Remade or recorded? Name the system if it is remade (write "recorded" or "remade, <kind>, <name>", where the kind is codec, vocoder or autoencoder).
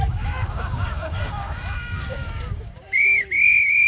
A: remade, codec, DAC